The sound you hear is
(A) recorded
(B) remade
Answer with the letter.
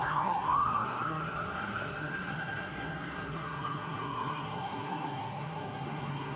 B